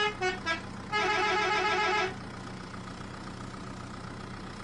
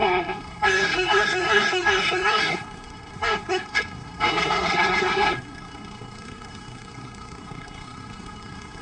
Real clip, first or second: first